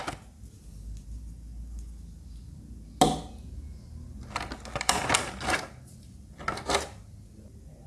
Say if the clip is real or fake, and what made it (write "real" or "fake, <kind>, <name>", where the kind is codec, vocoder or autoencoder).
real